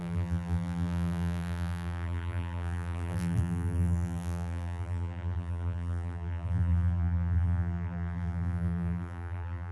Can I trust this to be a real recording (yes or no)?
no